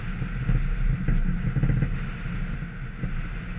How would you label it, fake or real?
real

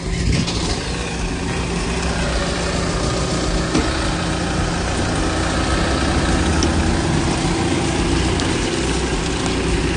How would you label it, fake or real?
real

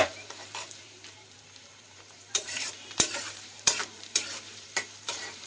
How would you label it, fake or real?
fake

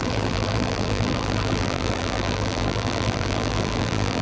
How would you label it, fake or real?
fake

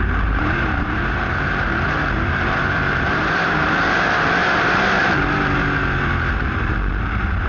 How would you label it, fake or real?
fake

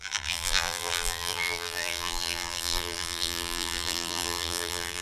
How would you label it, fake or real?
fake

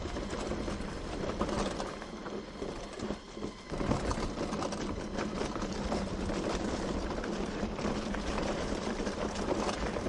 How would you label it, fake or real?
fake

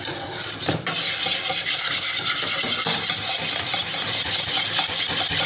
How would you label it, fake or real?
fake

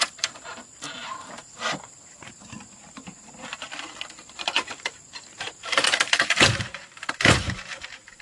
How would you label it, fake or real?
fake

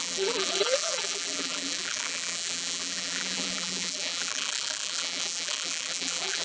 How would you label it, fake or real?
fake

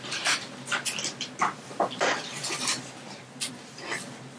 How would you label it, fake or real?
fake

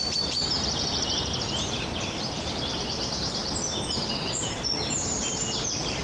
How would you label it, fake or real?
real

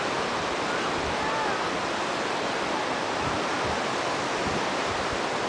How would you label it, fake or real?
fake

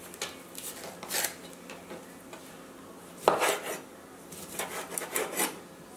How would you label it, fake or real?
real